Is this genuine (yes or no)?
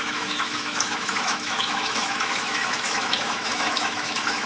no